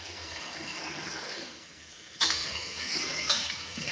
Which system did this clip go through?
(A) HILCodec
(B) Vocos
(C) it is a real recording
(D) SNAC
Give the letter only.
D